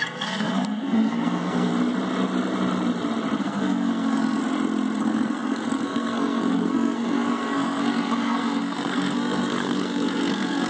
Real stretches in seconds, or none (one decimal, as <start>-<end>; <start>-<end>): 1.7-3.4; 4.4-5.0